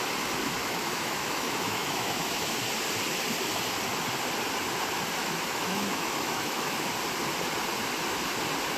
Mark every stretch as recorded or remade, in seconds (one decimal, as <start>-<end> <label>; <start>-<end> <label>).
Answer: 0.0-0.6 recorded; 0.6-2.6 remade; 2.6-5.2 recorded; 5.2-6.9 remade; 6.9-8.8 recorded